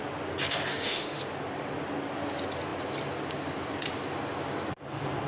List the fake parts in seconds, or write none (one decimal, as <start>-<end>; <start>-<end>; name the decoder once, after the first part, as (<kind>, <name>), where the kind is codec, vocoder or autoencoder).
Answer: 0.7-1.2 (autoencoder, DAC-VAE)